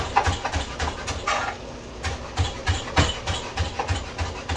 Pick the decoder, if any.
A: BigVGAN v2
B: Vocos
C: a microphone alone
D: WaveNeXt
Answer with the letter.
C